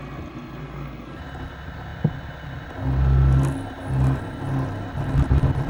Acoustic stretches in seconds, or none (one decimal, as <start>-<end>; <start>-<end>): 0.0-0.6; 1.2-5.7